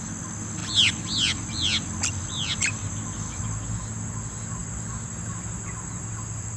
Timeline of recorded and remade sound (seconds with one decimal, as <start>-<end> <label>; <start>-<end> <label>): 0.0-6.6 recorded